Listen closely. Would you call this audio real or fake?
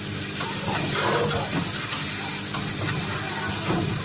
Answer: real